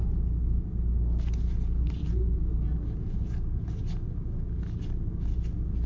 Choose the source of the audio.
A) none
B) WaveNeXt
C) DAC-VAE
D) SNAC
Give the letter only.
A